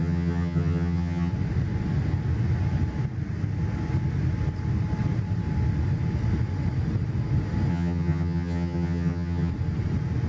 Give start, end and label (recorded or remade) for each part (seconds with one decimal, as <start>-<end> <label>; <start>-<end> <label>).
0.0-1.3 remade; 1.3-7.7 recorded; 7.7-9.5 remade; 9.5-10.3 recorded

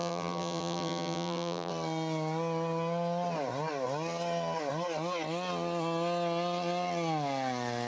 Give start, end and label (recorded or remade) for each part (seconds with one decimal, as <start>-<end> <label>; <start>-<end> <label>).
0.0-1.7 remade; 1.7-7.9 recorded